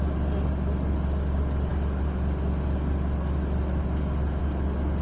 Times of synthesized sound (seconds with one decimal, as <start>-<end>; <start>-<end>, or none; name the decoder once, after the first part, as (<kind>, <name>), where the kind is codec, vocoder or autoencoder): none